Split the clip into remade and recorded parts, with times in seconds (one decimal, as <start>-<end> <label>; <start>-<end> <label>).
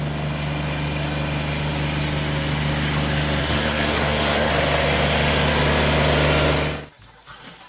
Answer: 0.0-3.4 recorded; 3.4-4.5 remade; 4.5-7.7 recorded